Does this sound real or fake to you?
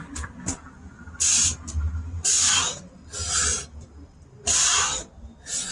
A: real